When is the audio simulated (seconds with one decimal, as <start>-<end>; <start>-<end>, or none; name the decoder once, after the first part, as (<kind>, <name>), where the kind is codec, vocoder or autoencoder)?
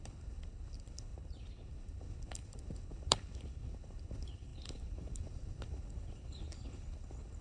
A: 0.0-7.4 (codec, HILCodec)